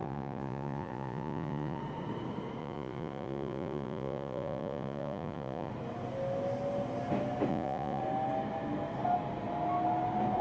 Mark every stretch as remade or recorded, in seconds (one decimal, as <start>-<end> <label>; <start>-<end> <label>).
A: 0.0-1.8 remade; 1.8-2.6 recorded; 2.6-5.7 remade; 5.7-7.5 recorded; 7.5-8.0 remade; 8.0-10.4 recorded